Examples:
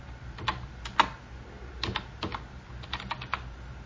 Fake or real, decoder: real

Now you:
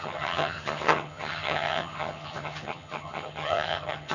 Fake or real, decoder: fake, vocoder, HiFi-GAN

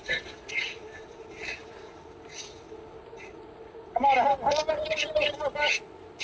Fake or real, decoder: real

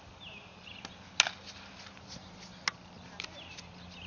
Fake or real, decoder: real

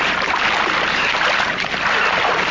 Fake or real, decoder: real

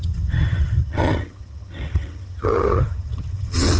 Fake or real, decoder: fake, vocoder, HiFi-GAN